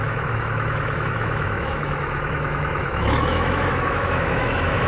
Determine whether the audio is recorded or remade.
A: remade